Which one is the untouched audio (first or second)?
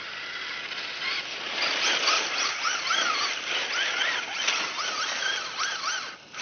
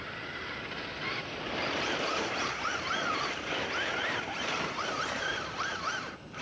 first